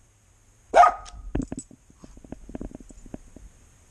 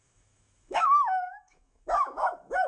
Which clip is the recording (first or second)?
first